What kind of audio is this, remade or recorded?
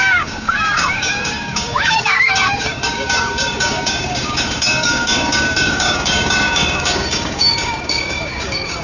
remade